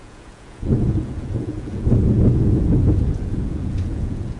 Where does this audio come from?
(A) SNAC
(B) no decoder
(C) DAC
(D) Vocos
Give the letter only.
D